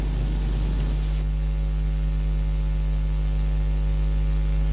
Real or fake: real